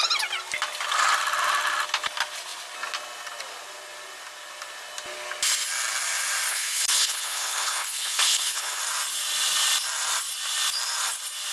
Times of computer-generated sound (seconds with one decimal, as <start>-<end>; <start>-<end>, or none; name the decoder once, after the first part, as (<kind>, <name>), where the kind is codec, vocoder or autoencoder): 6.5-8.8 (codec, HILCodec)